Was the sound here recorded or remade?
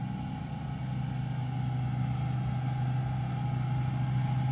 recorded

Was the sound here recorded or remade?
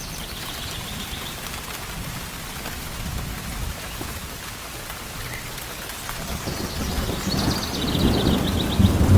recorded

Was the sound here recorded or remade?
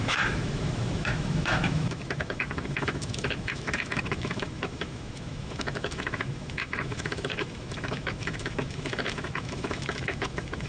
remade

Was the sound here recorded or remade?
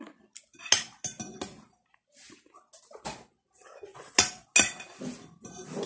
recorded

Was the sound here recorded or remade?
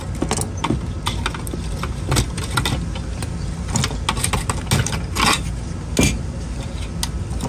recorded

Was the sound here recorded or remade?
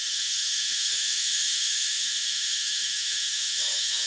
remade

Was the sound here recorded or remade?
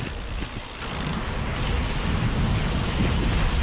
recorded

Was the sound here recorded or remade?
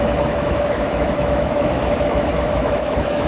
remade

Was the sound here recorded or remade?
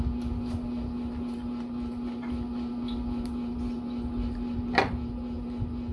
recorded